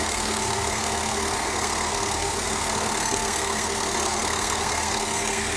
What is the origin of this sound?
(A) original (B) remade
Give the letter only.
B